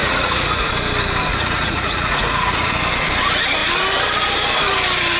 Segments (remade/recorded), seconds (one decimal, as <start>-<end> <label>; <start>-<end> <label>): 0.0-0.7 remade; 0.7-1.3 recorded; 1.3-2.7 remade; 2.7-5.2 recorded